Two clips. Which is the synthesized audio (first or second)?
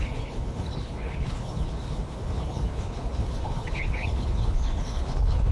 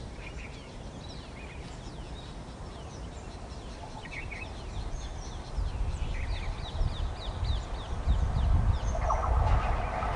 first